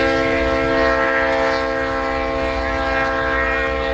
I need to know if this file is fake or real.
real